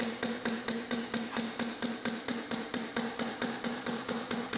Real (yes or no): no